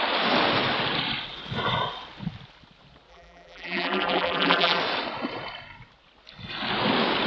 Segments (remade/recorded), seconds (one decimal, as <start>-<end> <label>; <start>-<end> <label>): 0.0-3.1 recorded; 3.1-4.8 remade; 4.8-7.3 recorded